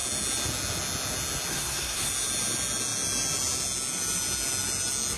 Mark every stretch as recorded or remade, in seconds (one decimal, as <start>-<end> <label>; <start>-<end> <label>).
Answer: 0.0-1.5 recorded; 1.5-2.1 remade; 2.1-5.2 recorded